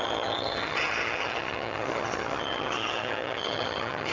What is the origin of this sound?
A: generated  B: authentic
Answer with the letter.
A